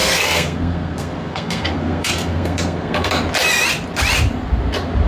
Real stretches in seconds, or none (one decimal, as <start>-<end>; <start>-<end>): 3.1-5.1